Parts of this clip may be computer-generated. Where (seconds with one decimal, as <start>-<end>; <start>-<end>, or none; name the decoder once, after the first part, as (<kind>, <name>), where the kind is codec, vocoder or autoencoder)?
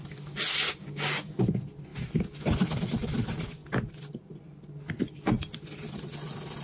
0.8-1.4 (codec, DAC)